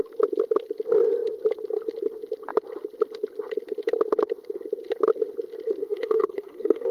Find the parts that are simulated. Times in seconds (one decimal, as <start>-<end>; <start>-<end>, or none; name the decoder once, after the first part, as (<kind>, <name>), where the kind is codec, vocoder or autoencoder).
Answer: 5.8-6.9 (codec, SNAC)